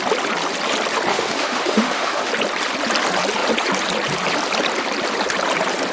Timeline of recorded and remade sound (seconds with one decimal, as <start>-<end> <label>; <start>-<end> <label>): 0.0-1.1 recorded; 1.1-2.3 remade; 2.3-5.9 recorded